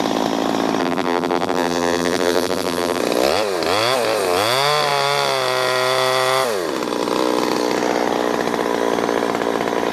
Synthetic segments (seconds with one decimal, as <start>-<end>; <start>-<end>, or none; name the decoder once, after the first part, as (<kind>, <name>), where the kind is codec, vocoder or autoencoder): 0.8-3.0 (vocoder, BigVGAN v2)